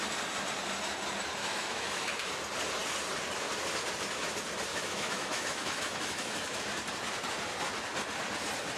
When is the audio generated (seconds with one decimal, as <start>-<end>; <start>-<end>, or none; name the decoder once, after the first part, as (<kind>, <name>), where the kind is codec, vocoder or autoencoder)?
1.4-2.3 (autoencoder, DAC-VAE); 4.7-6.6